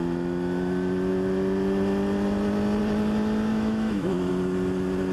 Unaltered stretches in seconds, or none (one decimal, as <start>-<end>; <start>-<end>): 0.0-3.5; 4.3-5.1